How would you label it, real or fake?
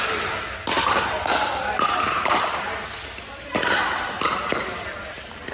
real